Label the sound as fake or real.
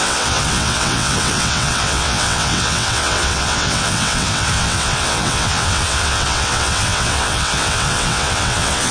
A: fake